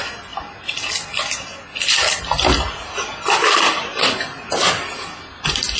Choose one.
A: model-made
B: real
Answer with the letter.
B